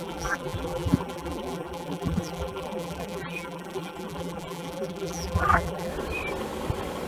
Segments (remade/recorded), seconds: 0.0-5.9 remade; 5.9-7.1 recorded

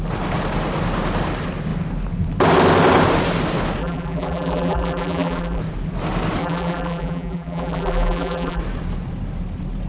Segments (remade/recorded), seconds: 0.0-3.8 recorded; 3.8-5.6 remade; 5.6-6.4 recorded; 6.4-8.6 remade; 8.6-9.9 recorded

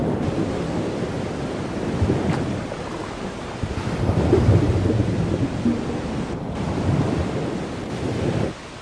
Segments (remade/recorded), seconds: 0.0-3.8 remade; 3.8-8.8 recorded

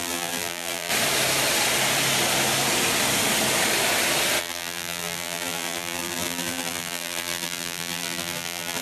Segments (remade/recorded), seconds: 0.0-0.9 remade; 0.9-4.4 recorded; 4.4-8.8 remade

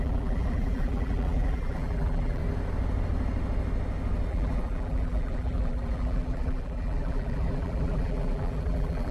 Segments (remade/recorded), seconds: 0.0-2.4 remade; 2.4-4.3 recorded; 4.3-9.1 remade

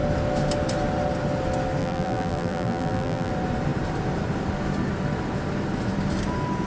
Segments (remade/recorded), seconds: 0.0-1.8 recorded; 1.8-3.3 remade; 3.3-6.7 recorded

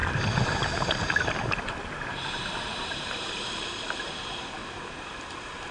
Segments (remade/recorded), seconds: 0.0-3.4 remade; 3.4-4.6 recorded; 4.6-5.7 remade

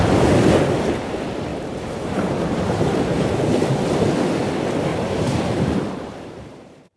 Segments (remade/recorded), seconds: 0.0-1.5 recorded; 1.5-3.4 remade; 3.4-4.9 recorded; 4.9-7.0 remade